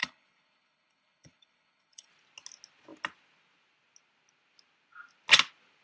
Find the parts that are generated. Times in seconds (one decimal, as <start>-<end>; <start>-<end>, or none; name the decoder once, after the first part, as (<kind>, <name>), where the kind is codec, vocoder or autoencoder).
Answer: 0.0-2.1 (codec, HILCodec)